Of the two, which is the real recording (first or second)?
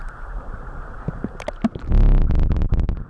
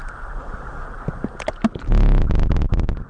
second